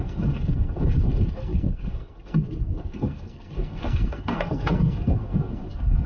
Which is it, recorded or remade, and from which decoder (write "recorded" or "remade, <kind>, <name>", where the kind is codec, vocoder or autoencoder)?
remade, codec, SNAC